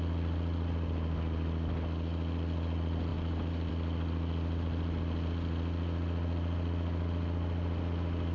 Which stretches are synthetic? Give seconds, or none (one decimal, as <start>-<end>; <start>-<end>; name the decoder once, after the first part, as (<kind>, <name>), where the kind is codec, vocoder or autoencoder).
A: 3.1-3.7 (vocoder, BigVGAN v2)

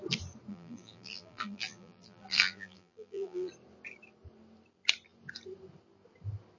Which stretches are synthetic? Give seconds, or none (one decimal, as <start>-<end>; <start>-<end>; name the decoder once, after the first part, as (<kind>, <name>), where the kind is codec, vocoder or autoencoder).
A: 0.5-3.5 (vocoder, BigVGAN v2)

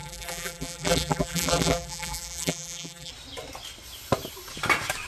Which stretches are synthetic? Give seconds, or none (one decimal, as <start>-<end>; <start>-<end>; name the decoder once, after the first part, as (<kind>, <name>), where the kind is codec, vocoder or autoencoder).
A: 0.0-3.1 (vocoder, BigVGAN v2)

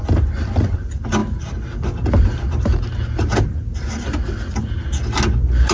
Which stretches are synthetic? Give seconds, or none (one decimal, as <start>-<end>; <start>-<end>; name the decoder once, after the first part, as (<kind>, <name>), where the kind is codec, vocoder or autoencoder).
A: none

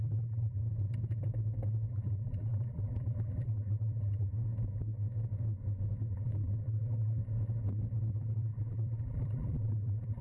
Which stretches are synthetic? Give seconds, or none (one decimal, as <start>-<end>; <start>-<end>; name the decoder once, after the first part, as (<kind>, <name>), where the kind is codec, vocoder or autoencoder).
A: 0.0-0.6 (vocoder, BigVGAN v2); 1.9-4.3; 6.1-7.2; 8.1-10.2